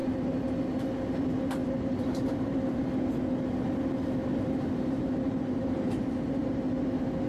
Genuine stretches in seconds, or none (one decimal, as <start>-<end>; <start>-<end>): 0.5-1.6; 2.8-4.2; 6.6-7.3

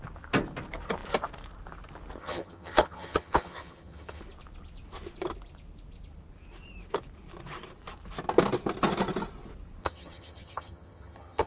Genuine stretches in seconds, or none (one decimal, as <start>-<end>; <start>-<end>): 0.0-2.2; 4.2-9.8